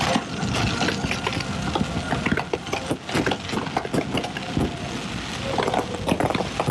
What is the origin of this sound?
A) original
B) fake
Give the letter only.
A